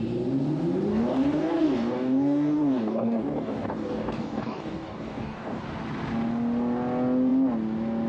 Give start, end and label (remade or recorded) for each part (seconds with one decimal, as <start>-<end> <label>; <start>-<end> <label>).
0.0-0.9 recorded; 0.9-5.6 remade; 5.6-8.1 recorded